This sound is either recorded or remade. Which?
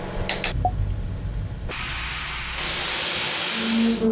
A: recorded